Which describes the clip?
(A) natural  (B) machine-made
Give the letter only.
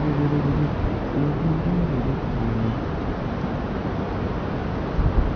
A